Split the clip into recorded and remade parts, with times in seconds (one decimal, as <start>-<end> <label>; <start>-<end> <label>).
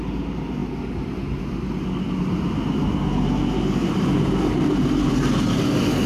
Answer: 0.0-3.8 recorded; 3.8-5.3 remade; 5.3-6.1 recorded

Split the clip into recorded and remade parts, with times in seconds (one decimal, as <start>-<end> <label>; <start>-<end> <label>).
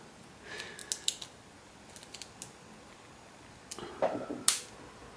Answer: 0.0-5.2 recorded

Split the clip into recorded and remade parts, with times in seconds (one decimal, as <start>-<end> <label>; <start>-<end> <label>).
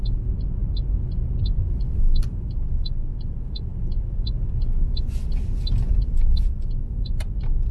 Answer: 0.0-7.7 recorded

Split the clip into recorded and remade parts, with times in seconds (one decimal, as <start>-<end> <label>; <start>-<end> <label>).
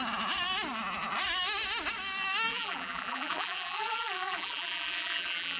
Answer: 0.0-2.5 recorded; 2.5-5.6 remade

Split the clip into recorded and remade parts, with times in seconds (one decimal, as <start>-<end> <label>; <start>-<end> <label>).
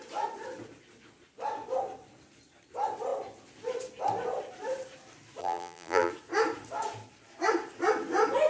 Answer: 0.0-5.4 recorded; 5.4-6.1 remade; 6.1-8.5 recorded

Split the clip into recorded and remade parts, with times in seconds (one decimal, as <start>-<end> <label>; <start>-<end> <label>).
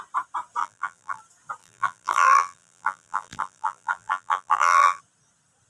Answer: 0.0-0.6 recorded; 0.6-1.2 remade; 1.2-1.6 recorded; 1.6-5.0 remade; 5.0-5.7 recorded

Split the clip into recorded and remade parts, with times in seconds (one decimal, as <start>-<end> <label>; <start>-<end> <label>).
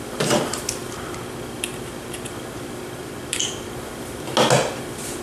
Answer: 0.0-0.8 recorded; 0.8-3.9 remade; 3.9-5.2 recorded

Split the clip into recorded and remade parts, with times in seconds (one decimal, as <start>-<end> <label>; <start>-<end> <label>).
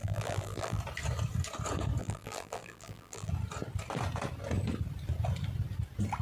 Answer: 0.0-0.8 remade; 0.8-2.0 recorded; 2.0-3.3 remade; 3.3-6.2 recorded